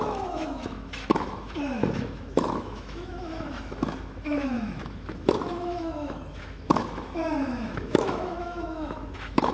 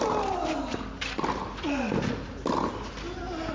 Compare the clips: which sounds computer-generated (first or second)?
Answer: first